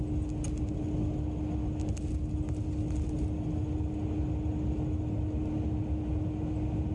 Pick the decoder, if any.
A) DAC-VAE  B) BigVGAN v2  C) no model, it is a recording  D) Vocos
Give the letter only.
C